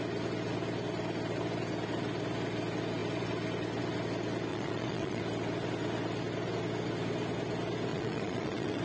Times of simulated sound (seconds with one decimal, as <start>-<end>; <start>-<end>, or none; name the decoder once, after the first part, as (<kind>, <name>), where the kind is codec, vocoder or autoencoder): 4.5-5.2 (vocoder, Vocos); 7.9-8.8